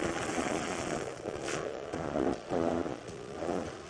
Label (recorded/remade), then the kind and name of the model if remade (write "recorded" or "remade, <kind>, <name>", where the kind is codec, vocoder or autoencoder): remade, vocoder, Vocos